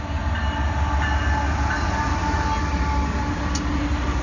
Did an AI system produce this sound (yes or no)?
no